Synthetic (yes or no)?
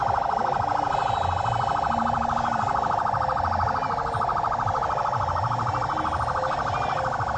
no